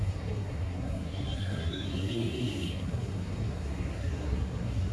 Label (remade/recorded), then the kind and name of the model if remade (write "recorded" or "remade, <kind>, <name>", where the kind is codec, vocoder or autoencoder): remade, codec, SNAC